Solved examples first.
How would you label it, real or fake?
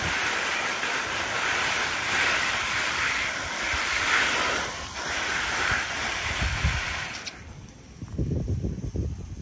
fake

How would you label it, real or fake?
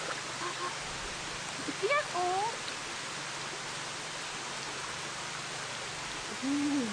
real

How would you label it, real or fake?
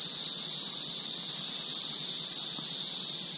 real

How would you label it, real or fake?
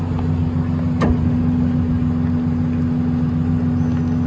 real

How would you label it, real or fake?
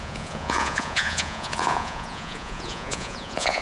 fake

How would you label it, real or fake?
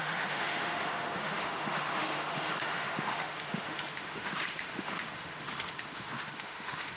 fake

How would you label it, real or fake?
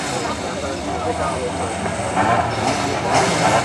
real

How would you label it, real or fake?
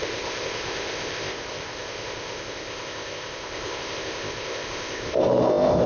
fake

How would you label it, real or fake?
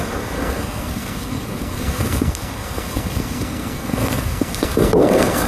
fake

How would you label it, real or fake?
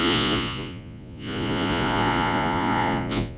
fake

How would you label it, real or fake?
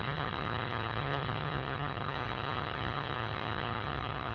fake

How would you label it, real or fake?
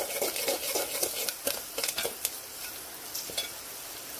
real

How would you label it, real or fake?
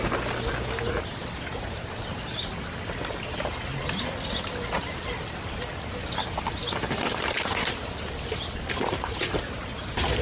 real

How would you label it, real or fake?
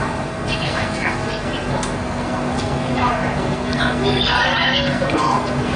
fake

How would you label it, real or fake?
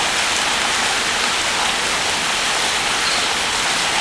real